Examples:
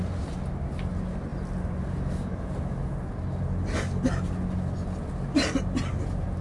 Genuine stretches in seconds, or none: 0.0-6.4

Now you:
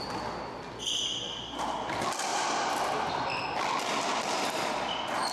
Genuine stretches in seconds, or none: 0.0-5.3

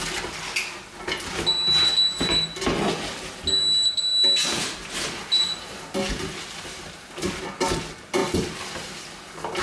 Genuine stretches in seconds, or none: 0.0-9.6

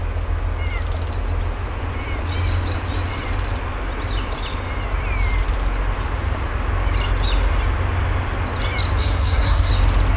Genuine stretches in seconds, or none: 0.0-9.0; 9.7-10.2

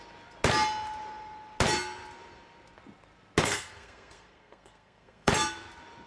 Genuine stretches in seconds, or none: 0.0-3.4; 5.3-6.1